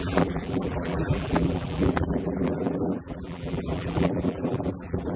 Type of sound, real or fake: fake